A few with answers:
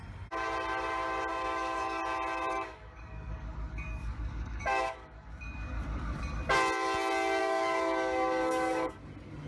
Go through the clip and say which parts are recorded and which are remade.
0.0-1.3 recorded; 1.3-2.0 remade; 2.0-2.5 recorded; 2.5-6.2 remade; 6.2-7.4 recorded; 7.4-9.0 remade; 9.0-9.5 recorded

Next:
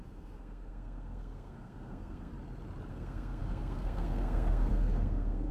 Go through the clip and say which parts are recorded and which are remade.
0.0-2.3 remade; 2.3-2.9 recorded; 2.9-5.5 remade

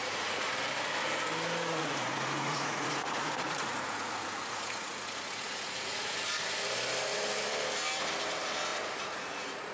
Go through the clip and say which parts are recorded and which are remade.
0.0-0.5 remade; 0.5-1.8 recorded; 1.8-6.1 remade; 6.1-8.7 recorded; 8.7-9.7 remade

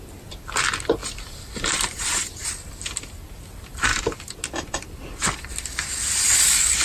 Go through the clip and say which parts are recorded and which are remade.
0.0-6.8 recorded

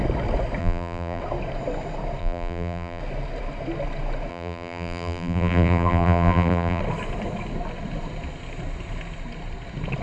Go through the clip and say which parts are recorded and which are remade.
0.0-0.6 recorded; 0.6-1.2 remade; 1.2-2.2 recorded; 2.2-3.0 remade; 3.0-4.3 recorded; 4.3-6.8 remade; 6.8-10.0 recorded